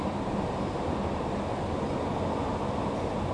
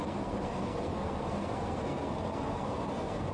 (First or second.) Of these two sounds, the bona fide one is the first